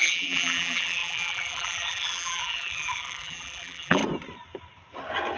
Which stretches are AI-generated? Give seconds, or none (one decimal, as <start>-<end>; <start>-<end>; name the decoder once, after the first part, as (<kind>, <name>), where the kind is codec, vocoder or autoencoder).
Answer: 0.0-4.0 (vocoder, BigVGAN v2)